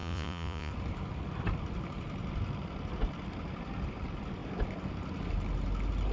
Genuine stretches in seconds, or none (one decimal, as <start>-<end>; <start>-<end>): 0.7-6.1